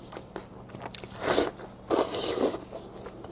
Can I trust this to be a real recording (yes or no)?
yes